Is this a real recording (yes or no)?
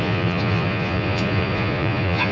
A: no